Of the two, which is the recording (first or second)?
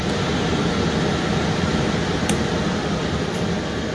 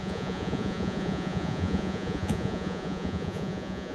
first